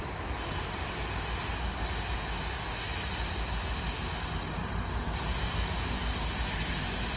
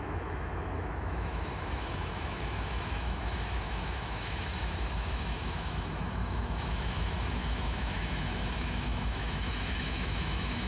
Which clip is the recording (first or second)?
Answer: first